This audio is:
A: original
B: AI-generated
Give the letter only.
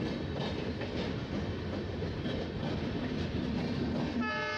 A